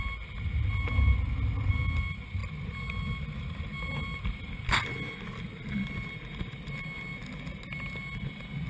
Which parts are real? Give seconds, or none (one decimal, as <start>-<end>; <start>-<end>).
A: 0.0-8.7